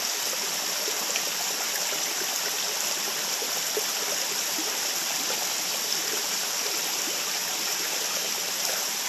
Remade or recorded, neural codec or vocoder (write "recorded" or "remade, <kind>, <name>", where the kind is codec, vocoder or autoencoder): recorded